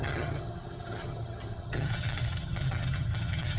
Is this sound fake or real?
fake